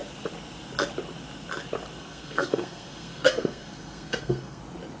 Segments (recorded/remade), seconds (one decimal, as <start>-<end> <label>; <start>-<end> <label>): 0.0-2.0 recorded; 2.0-4.6 remade; 4.6-5.0 recorded